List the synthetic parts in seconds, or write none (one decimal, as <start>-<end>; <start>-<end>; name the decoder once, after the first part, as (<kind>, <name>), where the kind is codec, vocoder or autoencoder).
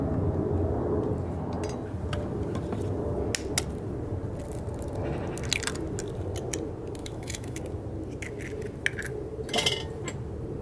7.0-7.6 (autoencoder, DAC-VAE)